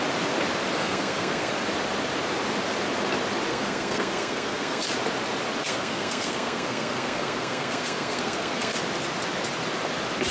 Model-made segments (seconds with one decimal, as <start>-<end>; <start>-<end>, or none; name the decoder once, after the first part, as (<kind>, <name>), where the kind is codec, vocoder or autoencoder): 0.8-1.5 (codec, SNAC); 3.5-4.8; 5.6-8.8